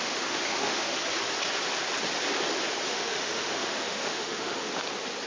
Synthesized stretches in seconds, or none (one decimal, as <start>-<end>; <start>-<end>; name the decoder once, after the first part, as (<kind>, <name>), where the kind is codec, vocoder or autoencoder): 0.0-0.9 (autoencoder, DAC-VAE); 2.9-4.7